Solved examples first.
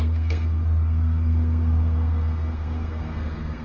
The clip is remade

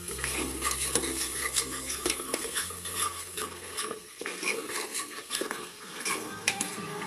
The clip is remade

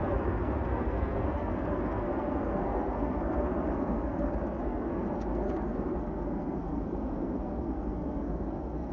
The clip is remade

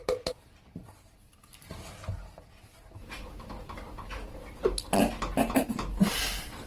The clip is recorded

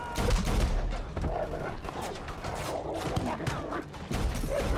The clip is recorded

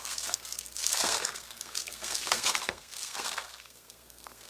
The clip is remade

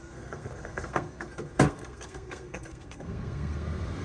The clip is remade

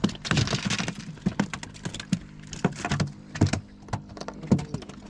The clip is recorded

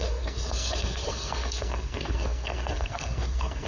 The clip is remade